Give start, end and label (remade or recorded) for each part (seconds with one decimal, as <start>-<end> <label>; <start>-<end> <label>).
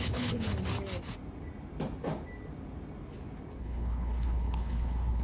0.0-0.5 remade; 0.5-3.6 recorded; 3.6-5.2 remade